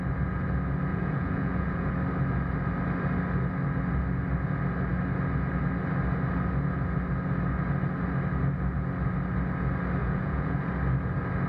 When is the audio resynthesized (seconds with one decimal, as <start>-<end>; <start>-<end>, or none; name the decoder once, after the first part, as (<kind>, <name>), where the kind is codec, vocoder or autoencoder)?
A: 0.9-1.9 (vocoder, Vocos); 10.0-10.7